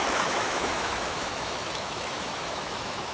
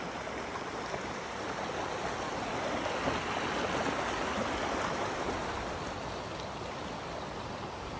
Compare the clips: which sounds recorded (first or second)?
second